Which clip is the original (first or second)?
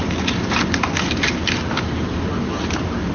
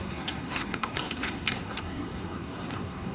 first